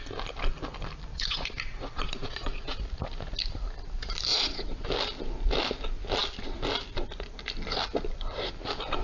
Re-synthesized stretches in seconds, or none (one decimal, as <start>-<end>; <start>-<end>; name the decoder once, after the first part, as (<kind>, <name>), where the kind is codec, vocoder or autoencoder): 1.1-2.8 (vocoder, Vocos); 4.3-4.9